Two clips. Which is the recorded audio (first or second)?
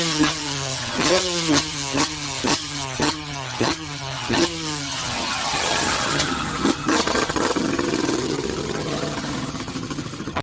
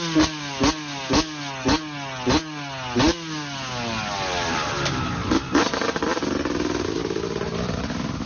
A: second